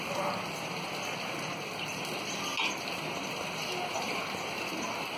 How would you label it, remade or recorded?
recorded